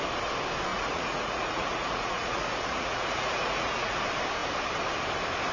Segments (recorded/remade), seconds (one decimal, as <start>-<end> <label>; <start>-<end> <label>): 0.0-0.7 recorded; 0.7-4.0 remade; 4.0-5.5 recorded